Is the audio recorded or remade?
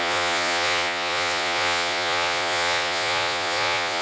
remade